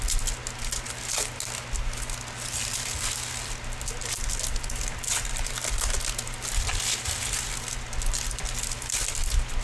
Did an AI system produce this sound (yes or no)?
no